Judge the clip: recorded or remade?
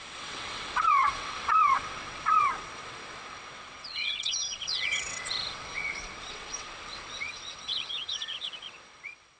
remade